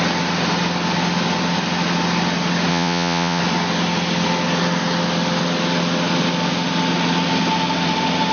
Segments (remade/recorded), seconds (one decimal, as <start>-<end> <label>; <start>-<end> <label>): 0.0-2.7 recorded; 2.7-3.4 remade; 3.4-8.3 recorded